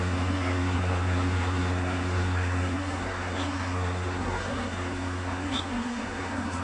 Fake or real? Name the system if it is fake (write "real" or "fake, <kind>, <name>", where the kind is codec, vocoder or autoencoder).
fake, codec, SNAC